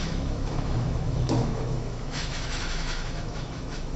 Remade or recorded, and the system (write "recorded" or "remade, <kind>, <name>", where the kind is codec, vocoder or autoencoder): remade, autoencoder, DAC-VAE